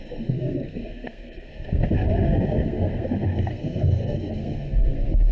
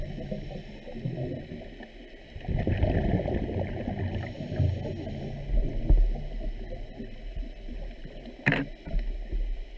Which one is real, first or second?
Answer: second